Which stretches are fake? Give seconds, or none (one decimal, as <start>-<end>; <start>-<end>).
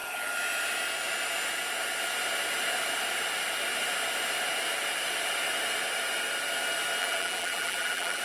7.0-8.2